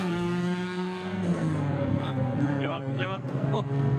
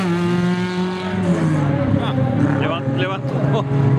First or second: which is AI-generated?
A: first